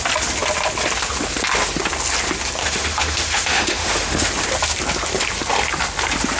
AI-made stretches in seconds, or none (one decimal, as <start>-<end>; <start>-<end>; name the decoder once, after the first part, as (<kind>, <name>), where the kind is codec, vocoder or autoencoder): 2.6-4.3 (autoencoder, DAC-VAE)